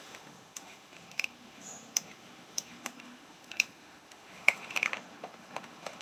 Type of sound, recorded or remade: remade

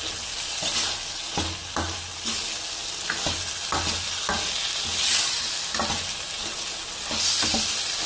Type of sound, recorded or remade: recorded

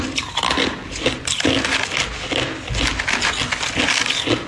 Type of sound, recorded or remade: recorded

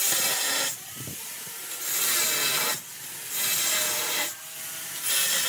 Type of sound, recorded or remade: recorded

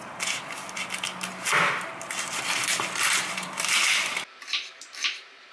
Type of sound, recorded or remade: recorded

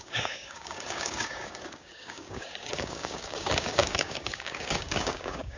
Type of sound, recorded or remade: remade